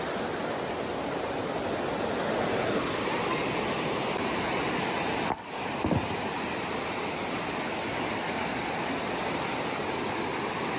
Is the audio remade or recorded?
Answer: recorded